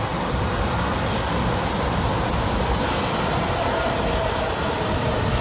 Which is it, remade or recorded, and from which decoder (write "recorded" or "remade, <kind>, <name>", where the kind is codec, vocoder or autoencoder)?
recorded